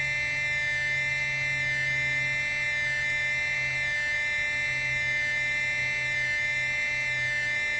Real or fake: real